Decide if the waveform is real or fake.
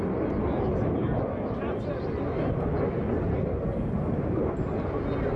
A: real